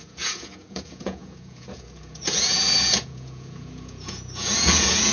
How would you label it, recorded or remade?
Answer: remade